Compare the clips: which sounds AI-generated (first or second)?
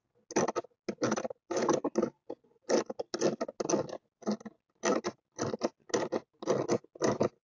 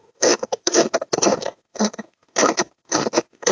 second